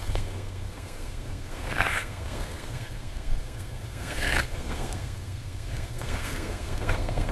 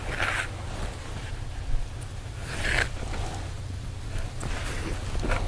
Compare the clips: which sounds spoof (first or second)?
first